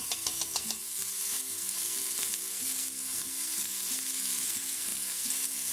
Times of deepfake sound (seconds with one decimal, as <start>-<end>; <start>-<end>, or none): 0.0-5.7